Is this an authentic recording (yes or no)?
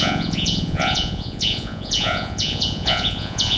no